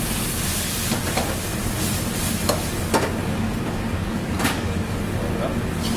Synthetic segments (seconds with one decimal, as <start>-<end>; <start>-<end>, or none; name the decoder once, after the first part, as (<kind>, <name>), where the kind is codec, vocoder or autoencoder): 3.2-5.0 (codec, DAC)